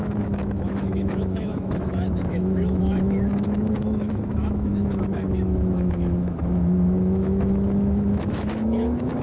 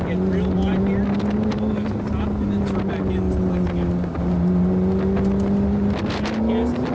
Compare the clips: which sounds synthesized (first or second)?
first